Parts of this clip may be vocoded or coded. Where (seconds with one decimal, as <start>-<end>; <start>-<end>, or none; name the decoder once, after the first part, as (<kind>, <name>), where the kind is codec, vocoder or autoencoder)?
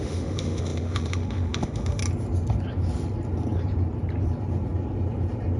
0.0-2.0 (autoencoder, DAC-VAE)